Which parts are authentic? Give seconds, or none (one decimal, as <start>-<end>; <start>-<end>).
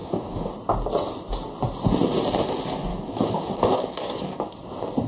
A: 0.5-2.9; 4.4-5.1